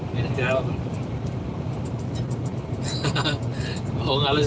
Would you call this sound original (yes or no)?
yes